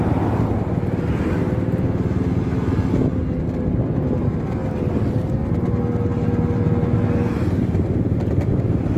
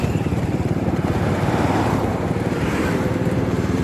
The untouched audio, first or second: first